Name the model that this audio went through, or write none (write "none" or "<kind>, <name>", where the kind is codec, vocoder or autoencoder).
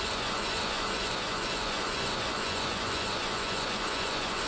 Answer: vocoder, Vocos